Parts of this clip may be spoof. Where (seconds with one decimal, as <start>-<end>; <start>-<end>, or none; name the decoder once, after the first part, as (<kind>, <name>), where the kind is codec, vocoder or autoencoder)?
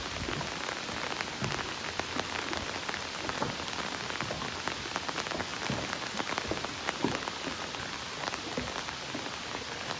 none